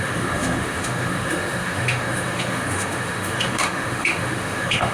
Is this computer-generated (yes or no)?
yes